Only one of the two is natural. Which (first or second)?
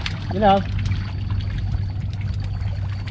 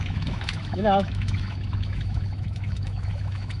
first